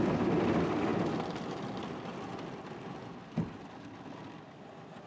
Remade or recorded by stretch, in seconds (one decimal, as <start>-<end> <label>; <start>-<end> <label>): 0.0-5.1 recorded